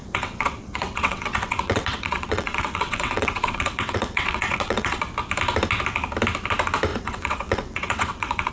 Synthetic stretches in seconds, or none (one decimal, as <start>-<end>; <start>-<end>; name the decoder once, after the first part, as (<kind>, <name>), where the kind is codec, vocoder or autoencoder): 0.0-5.0 (vocoder, WaveNeXt); 6.9-8.5